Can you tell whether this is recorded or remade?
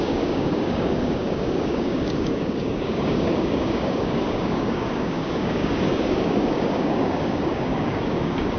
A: remade